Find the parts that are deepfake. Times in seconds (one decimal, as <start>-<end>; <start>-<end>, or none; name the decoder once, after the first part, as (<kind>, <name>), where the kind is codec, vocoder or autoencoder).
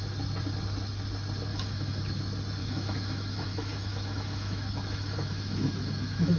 1.5-2.0 (autoencoder, DAC-VAE); 2.6-6.4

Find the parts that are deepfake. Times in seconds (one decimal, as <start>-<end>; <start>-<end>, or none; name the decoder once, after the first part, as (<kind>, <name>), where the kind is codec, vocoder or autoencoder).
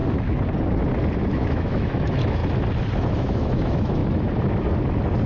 1.3-2.4 (autoencoder, DAC-VAE); 3.1-4.0